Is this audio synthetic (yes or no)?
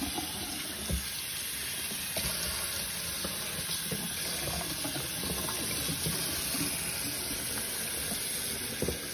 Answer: no